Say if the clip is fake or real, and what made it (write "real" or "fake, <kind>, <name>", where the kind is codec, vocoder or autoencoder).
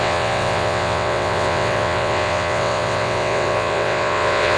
fake, vocoder, WaveNeXt